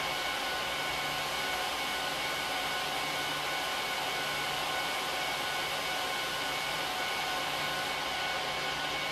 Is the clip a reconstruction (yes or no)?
no